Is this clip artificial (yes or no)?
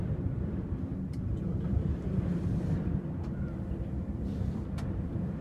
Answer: yes